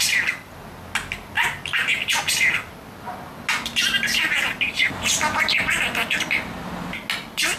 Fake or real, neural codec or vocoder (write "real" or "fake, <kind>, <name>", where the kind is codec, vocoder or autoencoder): real